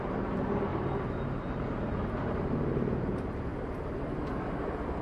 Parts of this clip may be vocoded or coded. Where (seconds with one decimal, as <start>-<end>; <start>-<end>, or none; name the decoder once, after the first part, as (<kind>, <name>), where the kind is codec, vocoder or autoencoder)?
0.0-3.5 (vocoder, BigVGAN v2); 4.3-5.0